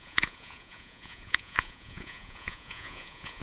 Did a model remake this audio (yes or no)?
yes